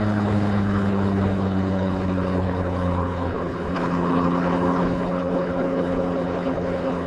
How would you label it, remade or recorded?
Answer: remade